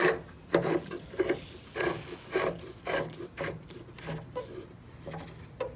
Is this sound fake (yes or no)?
no